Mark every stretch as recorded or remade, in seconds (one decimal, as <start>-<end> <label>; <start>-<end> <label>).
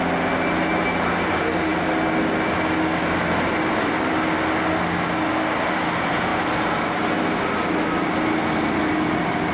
0.0-9.5 recorded